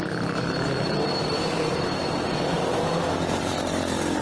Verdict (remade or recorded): remade